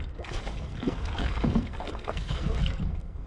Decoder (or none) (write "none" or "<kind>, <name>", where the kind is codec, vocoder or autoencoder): codec, SNAC